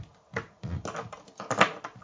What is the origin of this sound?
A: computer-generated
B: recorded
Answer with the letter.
B